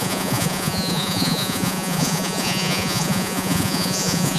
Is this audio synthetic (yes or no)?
yes